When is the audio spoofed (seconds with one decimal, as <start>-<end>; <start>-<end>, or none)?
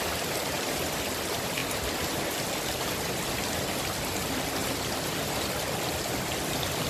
none